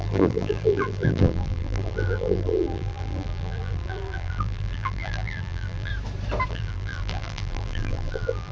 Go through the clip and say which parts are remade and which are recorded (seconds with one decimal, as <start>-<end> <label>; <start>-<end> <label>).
0.0-5.9 remade; 5.9-6.5 recorded; 6.5-8.5 remade